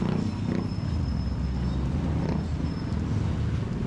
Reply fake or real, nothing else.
real